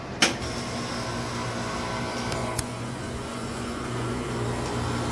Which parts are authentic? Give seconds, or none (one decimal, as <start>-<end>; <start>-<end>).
0.0-2.4; 4.3-5.1